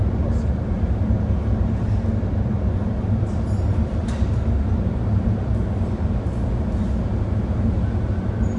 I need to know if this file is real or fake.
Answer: real